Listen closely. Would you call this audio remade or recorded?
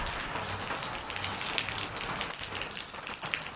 recorded